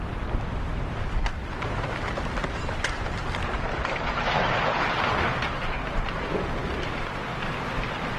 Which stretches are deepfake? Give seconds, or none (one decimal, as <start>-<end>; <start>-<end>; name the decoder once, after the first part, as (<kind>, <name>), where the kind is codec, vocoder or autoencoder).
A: none